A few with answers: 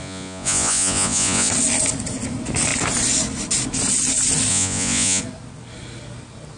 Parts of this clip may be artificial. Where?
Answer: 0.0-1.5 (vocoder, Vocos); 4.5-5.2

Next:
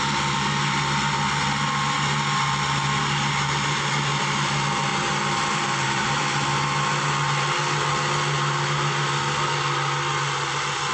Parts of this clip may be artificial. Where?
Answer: 4.9-6.2 (vocoder, BigVGAN v2)